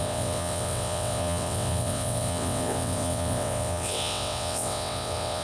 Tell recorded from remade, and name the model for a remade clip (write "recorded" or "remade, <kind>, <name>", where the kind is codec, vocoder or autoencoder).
remade, vocoder, WaveNeXt